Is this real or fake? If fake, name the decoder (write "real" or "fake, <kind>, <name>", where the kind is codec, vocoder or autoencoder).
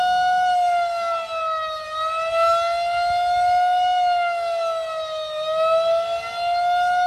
real